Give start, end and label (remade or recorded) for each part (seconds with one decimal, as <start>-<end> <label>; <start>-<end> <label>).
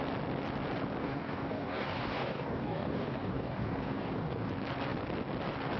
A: 0.0-1.0 recorded; 1.0-4.5 remade; 4.5-5.8 recorded